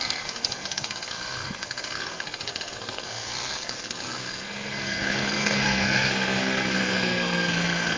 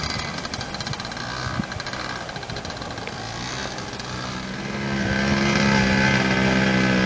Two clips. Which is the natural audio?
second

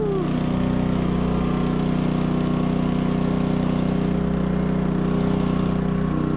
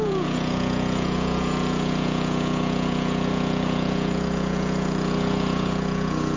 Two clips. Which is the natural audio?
first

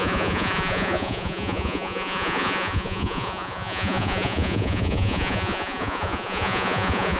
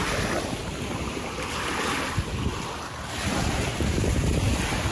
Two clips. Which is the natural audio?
second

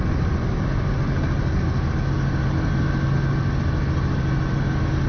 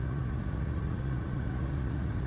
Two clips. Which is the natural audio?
first